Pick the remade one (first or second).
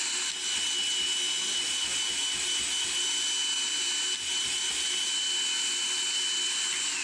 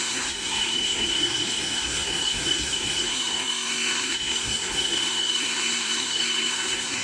second